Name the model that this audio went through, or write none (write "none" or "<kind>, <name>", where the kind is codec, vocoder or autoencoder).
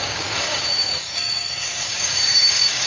codec, DAC